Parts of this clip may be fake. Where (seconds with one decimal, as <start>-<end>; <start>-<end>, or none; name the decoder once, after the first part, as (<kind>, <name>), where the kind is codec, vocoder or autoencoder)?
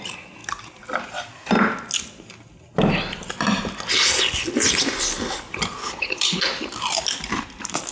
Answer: 5.8-6.4 (codec, HILCodec)